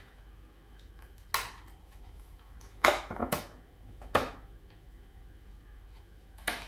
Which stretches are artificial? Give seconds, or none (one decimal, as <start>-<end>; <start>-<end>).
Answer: 0.0-1.3; 1.8-6.7